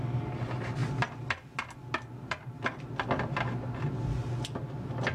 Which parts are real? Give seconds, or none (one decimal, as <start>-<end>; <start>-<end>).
0.0-5.1